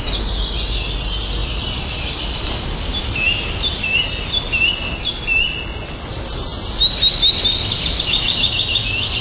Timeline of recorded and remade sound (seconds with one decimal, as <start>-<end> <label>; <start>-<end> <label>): 0.0-9.2 recorded